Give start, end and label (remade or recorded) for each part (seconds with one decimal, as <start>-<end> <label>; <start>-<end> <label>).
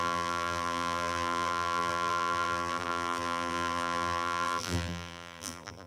0.0-5.9 remade